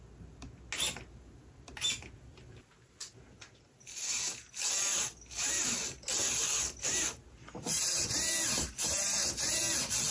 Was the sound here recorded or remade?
recorded